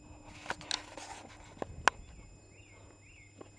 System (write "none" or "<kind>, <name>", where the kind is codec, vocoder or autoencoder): none